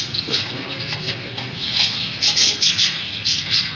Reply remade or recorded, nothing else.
remade